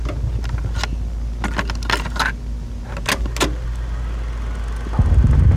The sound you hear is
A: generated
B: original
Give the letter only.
B